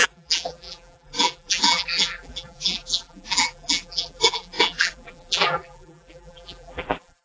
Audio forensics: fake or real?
fake